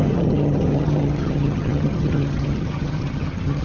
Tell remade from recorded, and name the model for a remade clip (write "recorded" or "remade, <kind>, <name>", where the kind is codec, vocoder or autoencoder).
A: remade, vocoder, HiFi-GAN